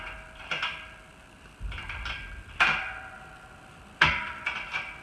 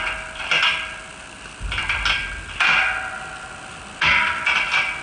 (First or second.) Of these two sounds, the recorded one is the second